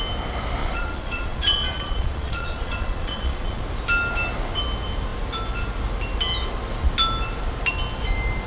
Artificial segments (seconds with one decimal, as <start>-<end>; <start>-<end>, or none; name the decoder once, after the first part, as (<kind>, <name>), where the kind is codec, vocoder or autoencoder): 0.6-3.6 (vocoder, Vocos)